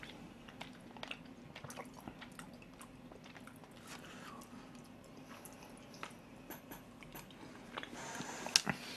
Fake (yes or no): no